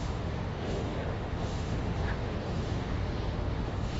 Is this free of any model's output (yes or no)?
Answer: no